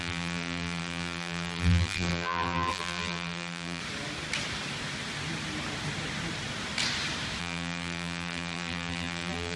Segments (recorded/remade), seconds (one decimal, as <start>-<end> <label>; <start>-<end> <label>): 0.0-3.8 remade; 3.8-7.4 recorded; 7.4-9.6 remade